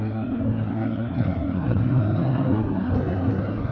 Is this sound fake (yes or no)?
yes